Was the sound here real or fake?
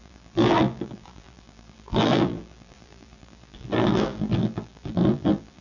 fake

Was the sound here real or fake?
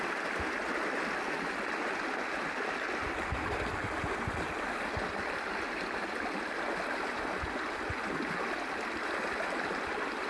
real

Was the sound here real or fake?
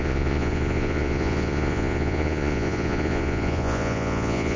fake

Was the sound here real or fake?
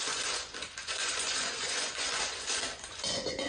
fake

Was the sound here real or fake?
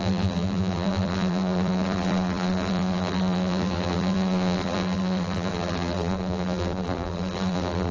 fake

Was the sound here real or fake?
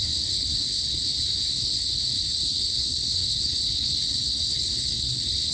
fake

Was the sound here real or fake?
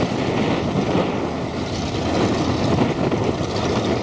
real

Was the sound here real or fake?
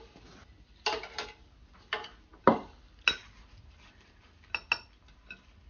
real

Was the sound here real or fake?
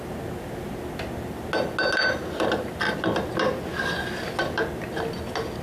real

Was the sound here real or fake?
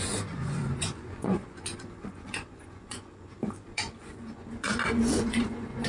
fake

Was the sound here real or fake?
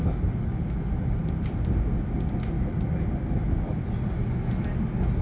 real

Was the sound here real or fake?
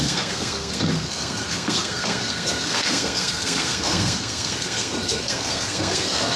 fake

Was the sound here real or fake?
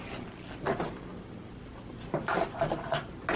real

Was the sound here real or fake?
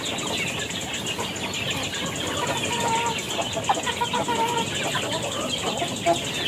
real